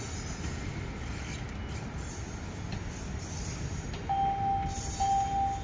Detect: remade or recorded recorded